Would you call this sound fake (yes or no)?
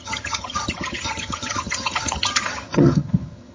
yes